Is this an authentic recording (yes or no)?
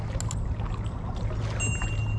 yes